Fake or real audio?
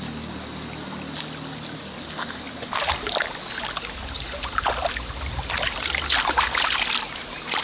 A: real